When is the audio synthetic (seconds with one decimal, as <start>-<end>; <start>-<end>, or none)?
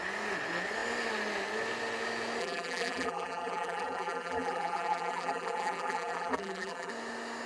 2.4-6.9